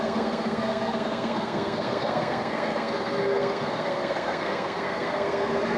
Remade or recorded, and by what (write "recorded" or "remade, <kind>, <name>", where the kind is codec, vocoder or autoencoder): remade, codec, SNAC